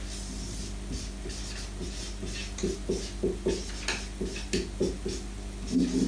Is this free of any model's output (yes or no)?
yes